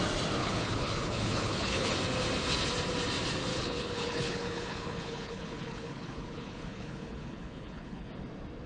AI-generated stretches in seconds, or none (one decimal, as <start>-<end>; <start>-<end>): 0.4-1.9; 3.5-8.1